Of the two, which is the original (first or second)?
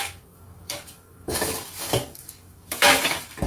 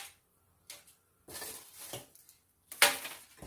second